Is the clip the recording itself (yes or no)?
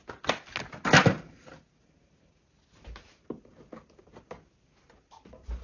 yes